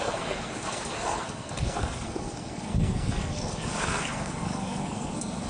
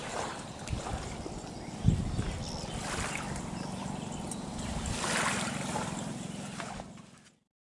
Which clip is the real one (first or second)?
second